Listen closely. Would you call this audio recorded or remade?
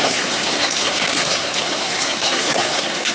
remade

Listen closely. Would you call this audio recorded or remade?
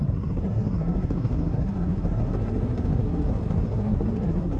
remade